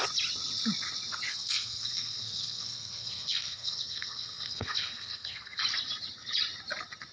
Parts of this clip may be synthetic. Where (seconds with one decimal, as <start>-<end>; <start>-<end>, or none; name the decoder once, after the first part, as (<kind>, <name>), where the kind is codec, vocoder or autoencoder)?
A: 1.3-5.6 (codec, SNAC)